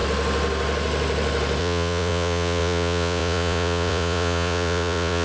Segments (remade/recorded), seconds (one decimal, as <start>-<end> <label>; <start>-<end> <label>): 0.0-1.6 recorded; 1.6-5.2 remade